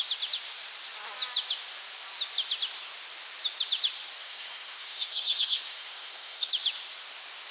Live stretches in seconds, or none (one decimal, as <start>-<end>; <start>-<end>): 0.0-4.2; 6.5-7.5